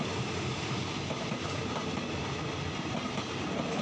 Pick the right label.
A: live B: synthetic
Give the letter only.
A